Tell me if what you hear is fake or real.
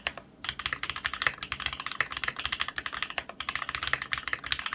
real